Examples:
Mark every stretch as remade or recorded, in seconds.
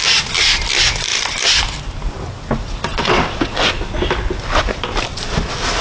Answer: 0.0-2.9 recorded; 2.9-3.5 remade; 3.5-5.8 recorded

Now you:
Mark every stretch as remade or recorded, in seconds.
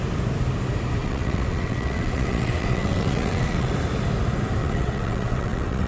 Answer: 0.0-1.0 recorded; 1.0-3.7 remade; 3.7-4.6 recorded; 4.6-5.9 remade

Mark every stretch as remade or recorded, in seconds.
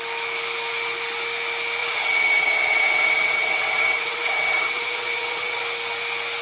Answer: 0.0-1.8 recorded; 1.8-5.6 remade; 5.6-6.4 recorded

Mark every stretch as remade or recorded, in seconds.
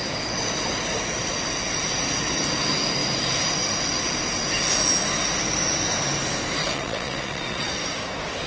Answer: 0.0-6.6 recorded; 6.6-7.7 remade; 7.7-8.5 recorded